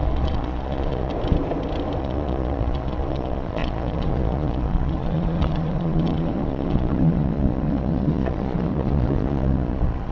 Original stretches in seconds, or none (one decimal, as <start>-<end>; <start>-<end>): 1.1-2.0